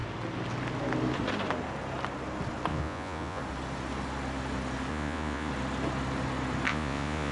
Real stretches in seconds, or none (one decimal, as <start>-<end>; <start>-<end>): 0.0-2.7; 3.4-4.9; 5.5-6.7